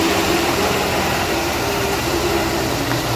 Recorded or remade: remade